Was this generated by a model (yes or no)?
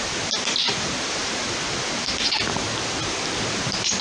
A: no